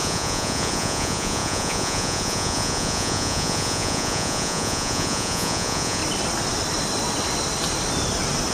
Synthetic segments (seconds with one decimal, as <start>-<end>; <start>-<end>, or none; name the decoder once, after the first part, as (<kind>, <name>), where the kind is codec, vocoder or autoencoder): 0.0-6.0 (vocoder, Vocos)